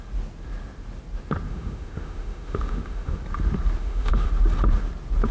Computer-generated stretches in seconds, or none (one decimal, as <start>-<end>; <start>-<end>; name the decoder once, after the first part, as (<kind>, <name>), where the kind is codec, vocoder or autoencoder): 1.5-3.2 (autoencoder, DAC-VAE); 3.8-4.3